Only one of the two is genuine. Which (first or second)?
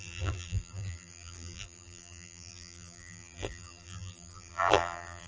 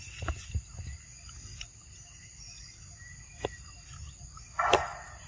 second